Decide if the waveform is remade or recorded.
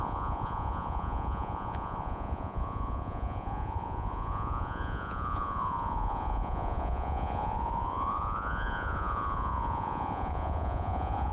remade